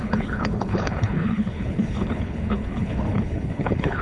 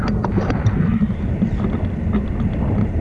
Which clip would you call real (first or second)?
second